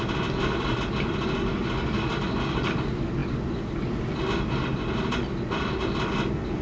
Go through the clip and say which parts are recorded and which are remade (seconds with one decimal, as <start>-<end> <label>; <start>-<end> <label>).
0.0-6.6 recorded